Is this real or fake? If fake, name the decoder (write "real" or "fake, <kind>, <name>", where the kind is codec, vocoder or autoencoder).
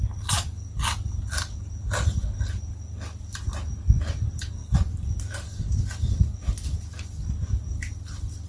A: real